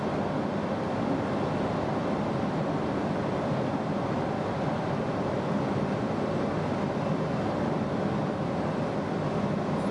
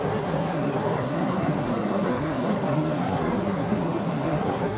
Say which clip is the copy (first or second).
second